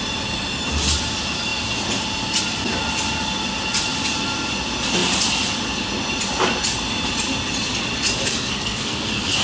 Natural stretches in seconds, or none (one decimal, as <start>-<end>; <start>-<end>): 0.0-8.3